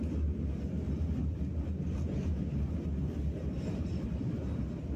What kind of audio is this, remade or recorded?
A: recorded